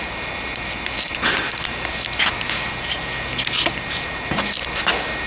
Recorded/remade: recorded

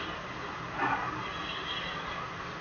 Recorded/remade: recorded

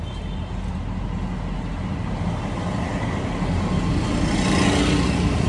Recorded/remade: recorded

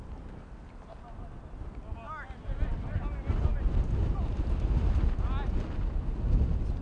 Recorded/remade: recorded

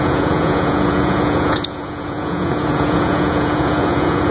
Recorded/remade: remade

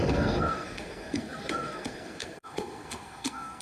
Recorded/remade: remade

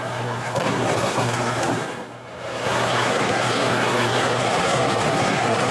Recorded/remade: remade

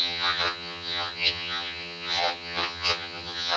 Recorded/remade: remade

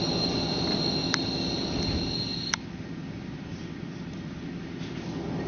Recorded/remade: recorded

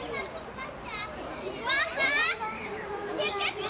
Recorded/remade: remade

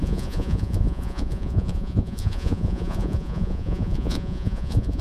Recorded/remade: remade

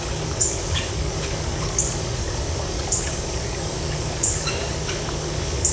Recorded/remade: remade